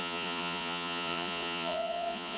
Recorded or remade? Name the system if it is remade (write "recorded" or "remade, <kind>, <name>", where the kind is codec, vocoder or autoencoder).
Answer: remade, vocoder, Vocos